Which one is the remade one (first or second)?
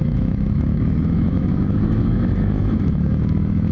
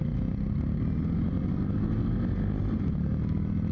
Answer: first